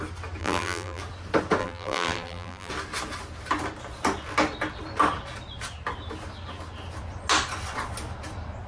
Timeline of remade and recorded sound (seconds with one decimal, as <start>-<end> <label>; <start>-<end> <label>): 0.0-0.4 recorded; 0.4-1.0 remade; 1.0-1.6 recorded; 1.6-2.7 remade; 2.7-8.7 recorded